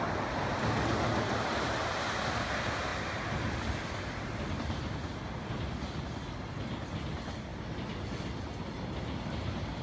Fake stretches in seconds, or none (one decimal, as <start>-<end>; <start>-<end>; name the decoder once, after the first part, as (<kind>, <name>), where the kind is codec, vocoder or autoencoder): 2.9-6.4 (vocoder, BigVGAN v2); 7.5-8.4